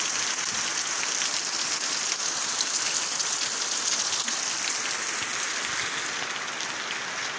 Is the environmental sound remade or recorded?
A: recorded